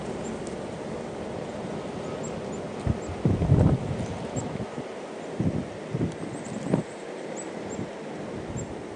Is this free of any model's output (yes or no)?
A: yes